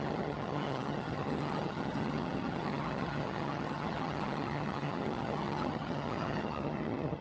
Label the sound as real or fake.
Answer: fake